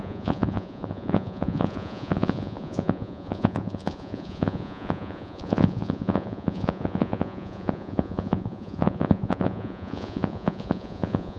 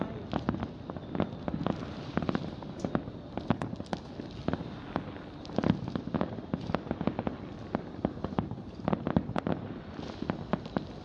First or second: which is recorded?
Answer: second